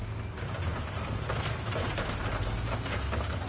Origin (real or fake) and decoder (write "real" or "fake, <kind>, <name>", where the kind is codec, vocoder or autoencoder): real